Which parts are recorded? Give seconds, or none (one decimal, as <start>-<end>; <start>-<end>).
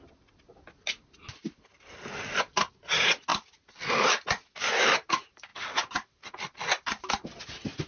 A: 0.0-7.9